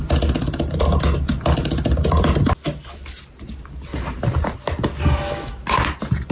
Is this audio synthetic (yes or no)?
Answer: no